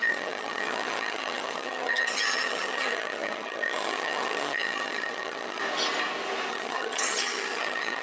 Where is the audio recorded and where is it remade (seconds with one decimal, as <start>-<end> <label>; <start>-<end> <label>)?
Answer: 0.0-5.6 remade; 5.6-6.5 recorded; 6.5-8.0 remade